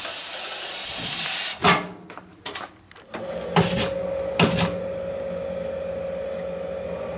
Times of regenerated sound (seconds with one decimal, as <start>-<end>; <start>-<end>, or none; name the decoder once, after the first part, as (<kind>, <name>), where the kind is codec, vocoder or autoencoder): none